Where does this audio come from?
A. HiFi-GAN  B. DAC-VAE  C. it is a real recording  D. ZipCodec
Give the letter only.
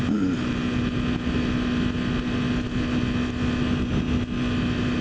C